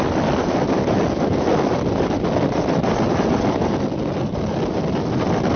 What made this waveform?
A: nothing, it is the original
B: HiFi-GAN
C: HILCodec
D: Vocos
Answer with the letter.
A